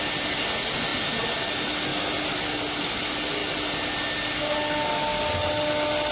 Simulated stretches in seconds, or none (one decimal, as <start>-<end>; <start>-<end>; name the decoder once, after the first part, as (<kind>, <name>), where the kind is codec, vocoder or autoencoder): none